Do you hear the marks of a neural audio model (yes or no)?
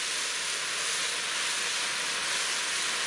no